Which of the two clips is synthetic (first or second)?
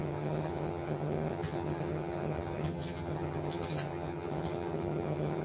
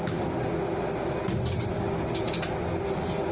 first